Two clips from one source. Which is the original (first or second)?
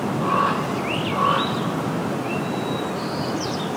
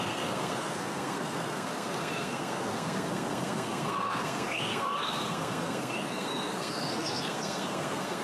first